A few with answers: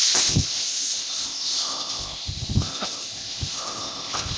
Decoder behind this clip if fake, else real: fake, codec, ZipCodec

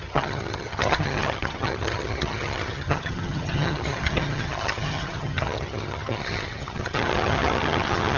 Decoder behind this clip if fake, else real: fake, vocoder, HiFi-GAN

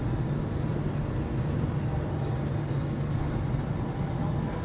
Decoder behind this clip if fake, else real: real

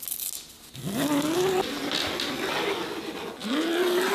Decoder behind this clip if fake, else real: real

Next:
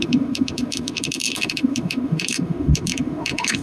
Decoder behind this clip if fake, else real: fake, autoencoder, DAC-VAE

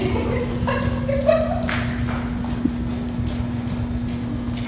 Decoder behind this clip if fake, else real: real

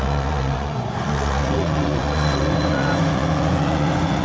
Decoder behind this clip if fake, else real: fake, vocoder, Vocos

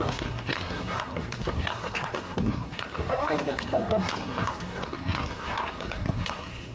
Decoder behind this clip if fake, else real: fake, codec, SNAC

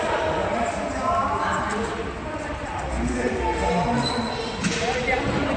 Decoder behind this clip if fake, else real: real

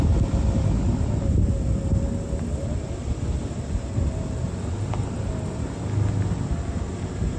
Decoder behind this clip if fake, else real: real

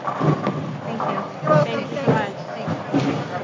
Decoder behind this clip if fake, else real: real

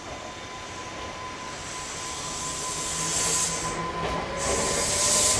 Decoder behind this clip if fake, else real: real